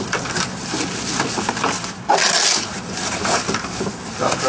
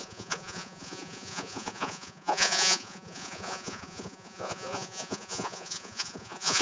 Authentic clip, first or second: first